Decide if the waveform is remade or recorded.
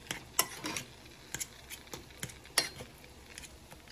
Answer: recorded